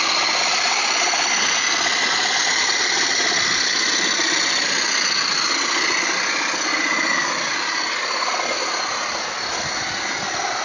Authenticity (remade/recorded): recorded